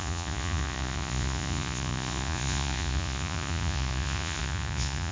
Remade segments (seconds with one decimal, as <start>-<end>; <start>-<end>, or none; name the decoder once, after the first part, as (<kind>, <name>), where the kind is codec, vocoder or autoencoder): 0.0-5.1 (vocoder, Vocos)